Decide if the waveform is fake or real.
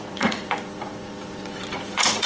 fake